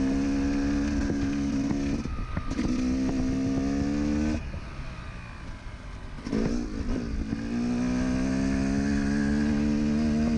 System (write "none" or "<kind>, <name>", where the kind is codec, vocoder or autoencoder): none